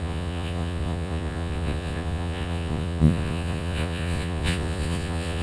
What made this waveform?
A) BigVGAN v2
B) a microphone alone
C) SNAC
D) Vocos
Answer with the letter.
D